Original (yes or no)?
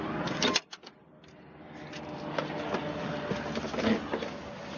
yes